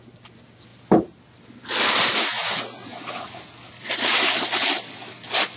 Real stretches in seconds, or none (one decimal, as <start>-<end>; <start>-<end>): 0.0-5.6